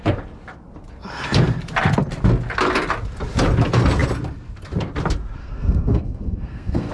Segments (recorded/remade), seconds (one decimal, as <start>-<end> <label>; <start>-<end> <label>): 0.0-5.4 recorded; 5.4-6.9 remade